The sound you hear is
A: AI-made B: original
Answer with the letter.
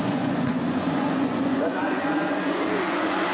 A